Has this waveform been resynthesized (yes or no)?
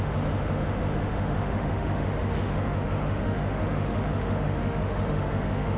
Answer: yes